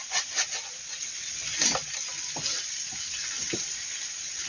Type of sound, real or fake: real